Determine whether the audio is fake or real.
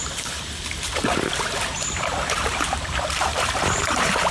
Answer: fake